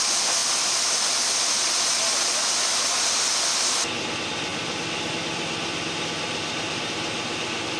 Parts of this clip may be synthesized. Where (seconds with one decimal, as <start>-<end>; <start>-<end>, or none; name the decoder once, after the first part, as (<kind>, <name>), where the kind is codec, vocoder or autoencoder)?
none